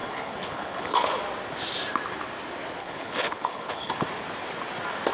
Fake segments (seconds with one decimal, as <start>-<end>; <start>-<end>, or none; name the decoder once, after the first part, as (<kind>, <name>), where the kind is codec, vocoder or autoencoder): 0.0-1.1 (codec, HILCodec); 2.8-3.9